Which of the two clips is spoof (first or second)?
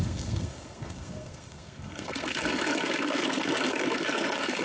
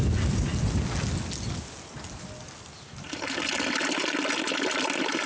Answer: first